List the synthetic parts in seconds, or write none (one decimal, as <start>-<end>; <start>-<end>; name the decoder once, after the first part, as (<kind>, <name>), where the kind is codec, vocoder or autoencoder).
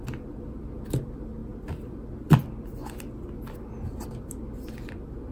none